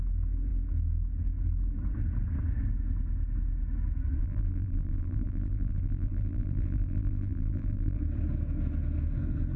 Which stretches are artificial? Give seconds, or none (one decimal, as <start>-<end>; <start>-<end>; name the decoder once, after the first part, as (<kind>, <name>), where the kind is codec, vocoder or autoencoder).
4.2-8.0 (vocoder, BigVGAN v2)